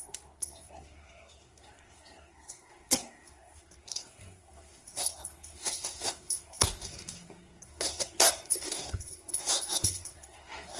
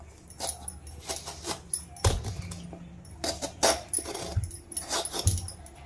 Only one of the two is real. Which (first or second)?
second